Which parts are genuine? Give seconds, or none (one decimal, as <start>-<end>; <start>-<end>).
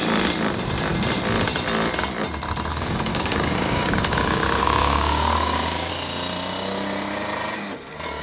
0.0-2.7; 5.9-8.2